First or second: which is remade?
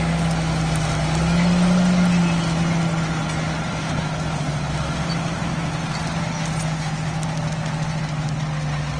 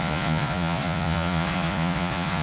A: second